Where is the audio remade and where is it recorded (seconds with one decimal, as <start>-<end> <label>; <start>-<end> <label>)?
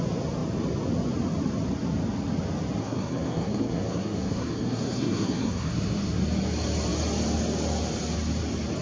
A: 0.0-2.8 recorded; 2.8-6.2 remade; 6.2-8.8 recorded